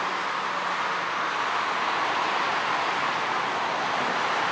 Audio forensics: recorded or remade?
recorded